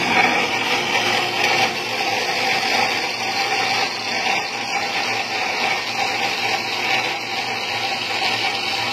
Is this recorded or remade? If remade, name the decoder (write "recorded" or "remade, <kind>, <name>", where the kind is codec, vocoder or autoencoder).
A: recorded